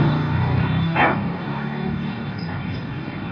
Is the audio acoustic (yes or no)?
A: no